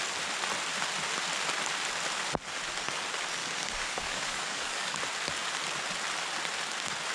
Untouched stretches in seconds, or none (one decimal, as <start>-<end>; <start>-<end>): 0.0-3.4; 5.0-7.1